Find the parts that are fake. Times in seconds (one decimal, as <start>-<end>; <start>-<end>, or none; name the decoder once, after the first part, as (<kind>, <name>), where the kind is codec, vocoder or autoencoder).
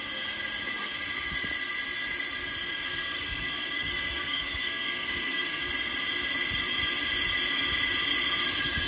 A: 2.7-5.6 (codec, SNAC)